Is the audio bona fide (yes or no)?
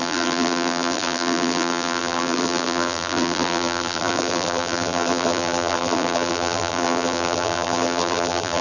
no